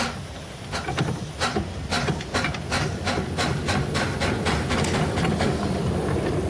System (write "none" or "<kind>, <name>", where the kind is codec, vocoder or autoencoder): none